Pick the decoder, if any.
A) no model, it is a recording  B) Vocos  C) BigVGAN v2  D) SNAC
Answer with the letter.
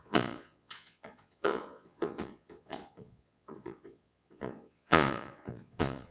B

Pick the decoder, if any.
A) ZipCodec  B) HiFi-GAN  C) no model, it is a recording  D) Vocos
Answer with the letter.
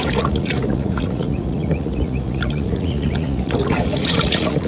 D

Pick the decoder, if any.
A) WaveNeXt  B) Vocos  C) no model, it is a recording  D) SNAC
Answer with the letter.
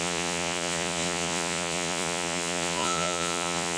B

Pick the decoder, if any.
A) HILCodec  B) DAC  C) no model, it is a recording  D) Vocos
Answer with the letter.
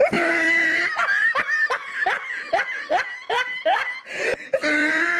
C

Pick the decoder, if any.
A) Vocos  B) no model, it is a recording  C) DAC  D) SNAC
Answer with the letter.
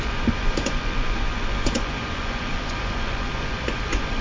A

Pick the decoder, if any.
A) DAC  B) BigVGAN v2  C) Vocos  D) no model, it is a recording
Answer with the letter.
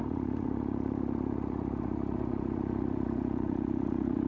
C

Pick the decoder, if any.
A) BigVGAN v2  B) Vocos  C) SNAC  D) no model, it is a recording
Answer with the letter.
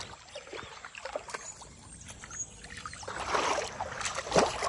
D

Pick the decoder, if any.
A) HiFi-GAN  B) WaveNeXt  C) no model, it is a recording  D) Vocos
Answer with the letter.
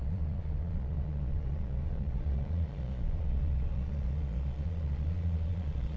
D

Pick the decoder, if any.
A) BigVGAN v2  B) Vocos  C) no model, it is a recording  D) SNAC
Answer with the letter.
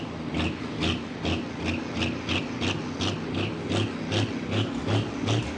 C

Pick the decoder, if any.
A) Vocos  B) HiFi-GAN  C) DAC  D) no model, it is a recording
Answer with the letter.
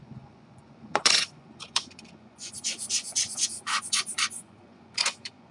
A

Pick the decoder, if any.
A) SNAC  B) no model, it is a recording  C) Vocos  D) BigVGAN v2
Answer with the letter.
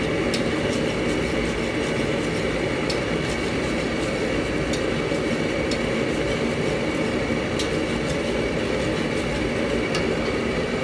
B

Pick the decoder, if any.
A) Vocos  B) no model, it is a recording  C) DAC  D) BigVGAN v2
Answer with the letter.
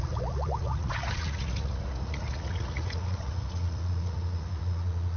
A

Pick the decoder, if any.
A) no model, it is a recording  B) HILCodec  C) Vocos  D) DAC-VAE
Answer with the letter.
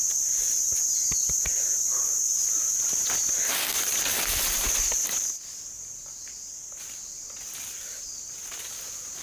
A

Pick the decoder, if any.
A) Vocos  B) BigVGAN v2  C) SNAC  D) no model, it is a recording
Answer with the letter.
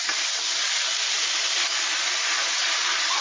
D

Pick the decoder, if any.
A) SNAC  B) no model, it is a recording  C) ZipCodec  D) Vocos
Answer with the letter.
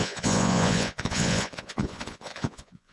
D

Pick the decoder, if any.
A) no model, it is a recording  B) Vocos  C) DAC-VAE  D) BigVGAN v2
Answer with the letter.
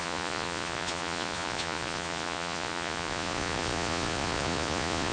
B